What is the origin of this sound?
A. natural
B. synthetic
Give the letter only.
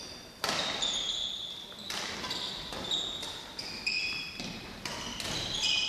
A